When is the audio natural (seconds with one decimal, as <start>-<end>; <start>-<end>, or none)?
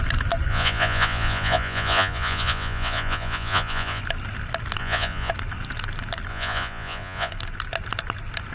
0.0-0.5; 4.0-4.8; 5.3-6.3; 7.3-8.5